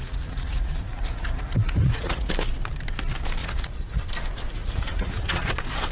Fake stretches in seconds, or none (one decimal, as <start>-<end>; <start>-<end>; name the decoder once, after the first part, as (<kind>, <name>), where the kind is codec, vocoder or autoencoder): 0.0-2.3 (vocoder, Vocos); 3.4-4.0; 4.6-5.5